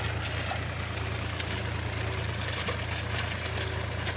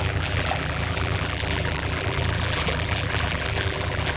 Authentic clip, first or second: first